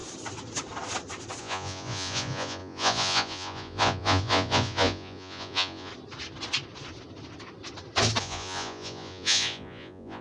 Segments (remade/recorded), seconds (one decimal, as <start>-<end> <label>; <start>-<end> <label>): 0.0-1.4 recorded; 1.4-5.9 remade; 5.9-8.2 recorded; 8.2-10.2 remade